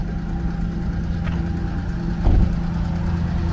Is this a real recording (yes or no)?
yes